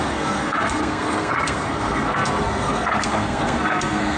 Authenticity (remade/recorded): remade